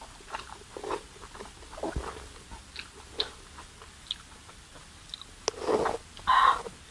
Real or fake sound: real